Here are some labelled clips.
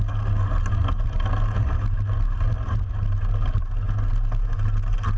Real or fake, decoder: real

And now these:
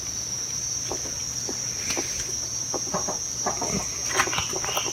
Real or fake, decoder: real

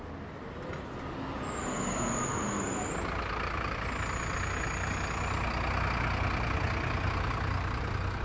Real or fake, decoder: real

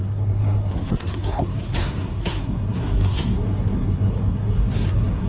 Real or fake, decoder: fake, codec, SNAC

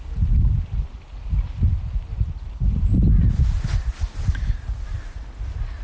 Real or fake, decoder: real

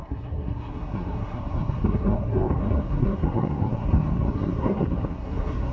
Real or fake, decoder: fake, codec, SNAC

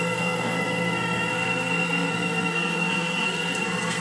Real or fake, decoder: fake, codec, SNAC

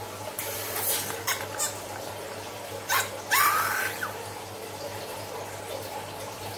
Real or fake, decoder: real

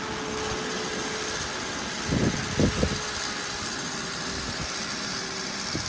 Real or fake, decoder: real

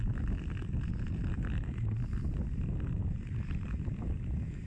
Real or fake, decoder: real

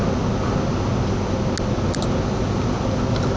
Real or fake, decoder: real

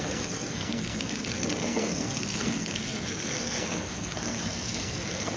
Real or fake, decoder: fake, codec, SNAC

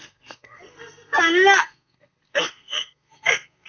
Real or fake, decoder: fake, codec, SNAC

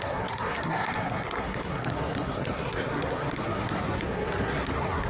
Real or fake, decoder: fake, codec, SNAC